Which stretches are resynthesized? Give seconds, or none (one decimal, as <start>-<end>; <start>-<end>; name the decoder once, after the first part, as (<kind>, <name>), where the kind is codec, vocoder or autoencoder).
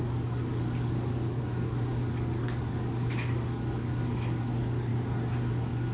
0.0-4.9 (codec, DAC); 5.4-5.9